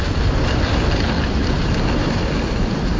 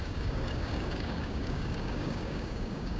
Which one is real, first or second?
first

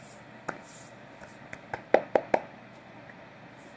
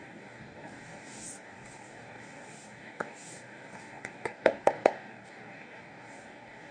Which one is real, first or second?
first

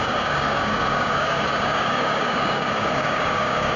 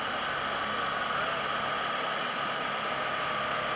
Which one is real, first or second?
second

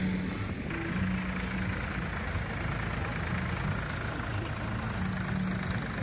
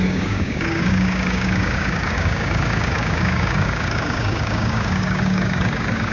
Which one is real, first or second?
first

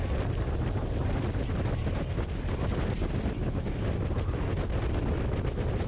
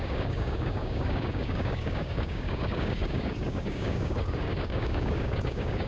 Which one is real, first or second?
first